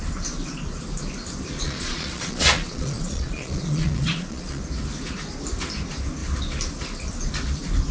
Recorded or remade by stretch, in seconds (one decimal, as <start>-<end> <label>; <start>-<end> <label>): 0.0-1.6 recorded; 1.6-4.6 remade; 4.6-7.9 recorded